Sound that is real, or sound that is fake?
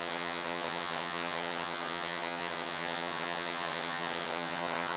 fake